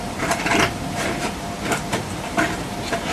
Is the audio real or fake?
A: fake